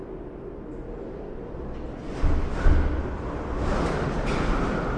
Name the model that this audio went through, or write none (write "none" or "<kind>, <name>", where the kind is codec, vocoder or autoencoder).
none